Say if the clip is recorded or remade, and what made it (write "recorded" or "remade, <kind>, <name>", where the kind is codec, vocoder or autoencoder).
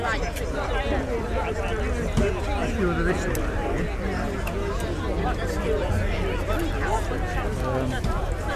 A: recorded